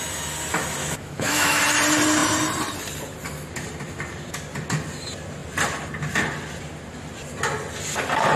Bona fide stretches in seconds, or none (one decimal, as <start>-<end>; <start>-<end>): 0.0-0.8; 1.6-8.4